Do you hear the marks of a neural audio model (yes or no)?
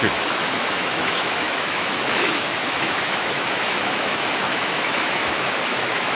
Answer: yes